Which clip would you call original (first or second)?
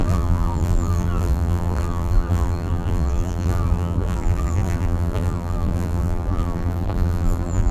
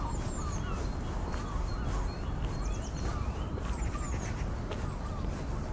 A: second